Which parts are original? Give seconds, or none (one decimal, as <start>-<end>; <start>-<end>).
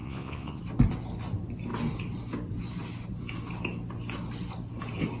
0.6-5.2